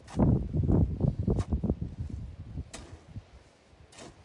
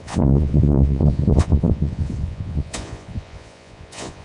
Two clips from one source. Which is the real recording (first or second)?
first